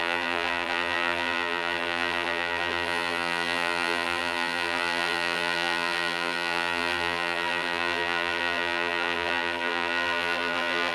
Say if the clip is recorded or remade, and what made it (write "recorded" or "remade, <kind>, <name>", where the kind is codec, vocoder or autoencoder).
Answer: remade, vocoder, BigVGAN v2